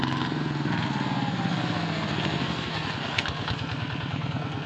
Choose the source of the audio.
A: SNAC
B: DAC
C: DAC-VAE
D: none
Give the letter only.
A